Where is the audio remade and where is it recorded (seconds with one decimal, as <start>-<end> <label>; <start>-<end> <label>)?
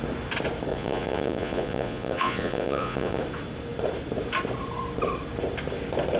0.0-0.7 recorded; 0.7-3.2 remade; 3.2-6.2 recorded